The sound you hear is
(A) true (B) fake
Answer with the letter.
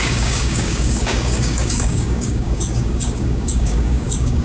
B